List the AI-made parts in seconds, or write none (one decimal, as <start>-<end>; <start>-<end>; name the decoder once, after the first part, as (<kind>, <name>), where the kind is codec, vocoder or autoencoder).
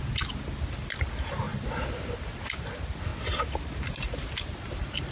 none